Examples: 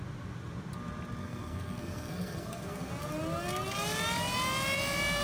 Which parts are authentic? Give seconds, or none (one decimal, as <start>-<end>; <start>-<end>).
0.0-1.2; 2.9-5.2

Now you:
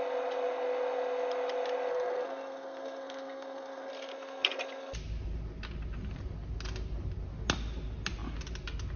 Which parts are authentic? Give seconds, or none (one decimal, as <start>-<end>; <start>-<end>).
0.0-1.9; 3.9-9.0

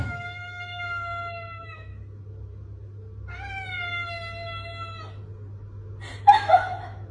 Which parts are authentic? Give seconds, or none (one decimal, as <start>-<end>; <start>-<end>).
1.9-6.2

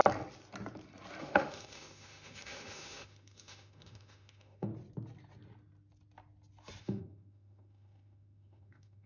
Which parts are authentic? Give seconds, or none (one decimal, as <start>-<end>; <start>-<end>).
0.0-1.2; 4.7-6.8

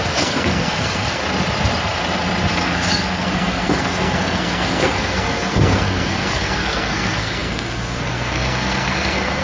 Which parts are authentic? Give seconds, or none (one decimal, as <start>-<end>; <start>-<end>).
1.2-2.5

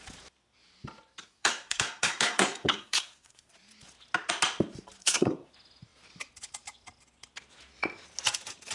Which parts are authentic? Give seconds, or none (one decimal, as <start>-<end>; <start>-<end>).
0.0-1.2; 3.5-5.0; 5.5-8.7

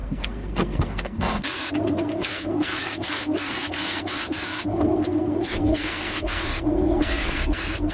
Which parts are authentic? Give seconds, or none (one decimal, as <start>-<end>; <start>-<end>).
none

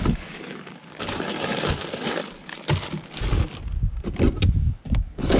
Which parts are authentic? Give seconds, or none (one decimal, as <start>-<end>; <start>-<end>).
2.2-4.6